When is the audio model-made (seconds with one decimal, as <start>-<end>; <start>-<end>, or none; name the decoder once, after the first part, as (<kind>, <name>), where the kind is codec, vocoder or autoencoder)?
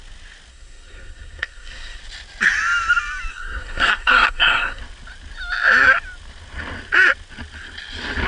0.5-2.0 (codec, SNAC); 3.3-4.8